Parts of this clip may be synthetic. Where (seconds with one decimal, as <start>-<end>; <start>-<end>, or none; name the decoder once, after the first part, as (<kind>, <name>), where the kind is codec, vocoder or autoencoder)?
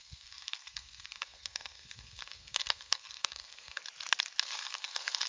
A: 0.0-3.8 (codec, SNAC); 4.4-5.3